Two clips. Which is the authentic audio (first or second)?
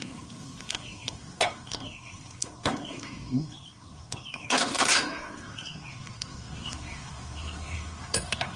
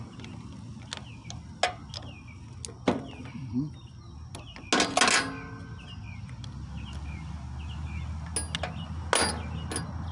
second